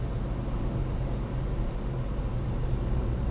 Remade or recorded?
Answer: recorded